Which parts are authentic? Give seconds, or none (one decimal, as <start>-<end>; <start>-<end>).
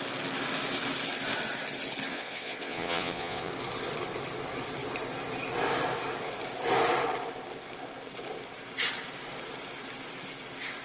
0.0-2.1; 3.5-10.8